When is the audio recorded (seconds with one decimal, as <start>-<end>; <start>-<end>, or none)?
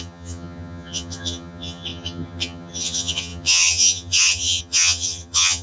none